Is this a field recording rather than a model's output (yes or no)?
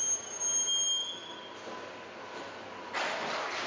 yes